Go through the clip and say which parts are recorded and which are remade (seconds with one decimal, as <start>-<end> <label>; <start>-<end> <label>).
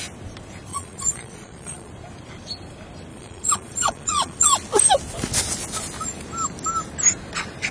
0.0-0.7 recorded; 0.7-1.9 remade; 1.9-3.1 recorded; 3.1-4.5 remade; 4.5-7.7 recorded